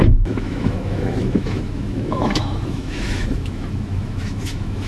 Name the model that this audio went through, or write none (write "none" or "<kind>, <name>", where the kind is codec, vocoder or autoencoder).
autoencoder, DAC-VAE